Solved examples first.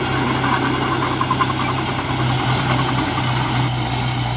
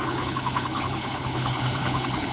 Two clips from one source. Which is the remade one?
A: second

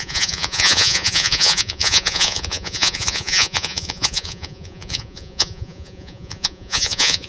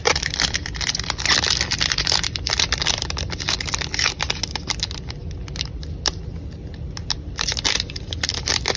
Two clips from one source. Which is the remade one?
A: first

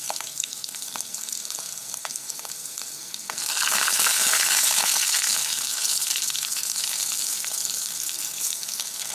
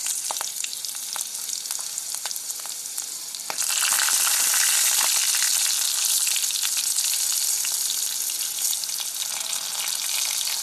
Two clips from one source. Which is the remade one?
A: first